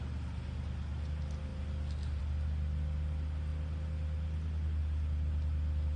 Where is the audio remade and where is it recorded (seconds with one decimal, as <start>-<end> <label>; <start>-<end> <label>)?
0.0-6.0 recorded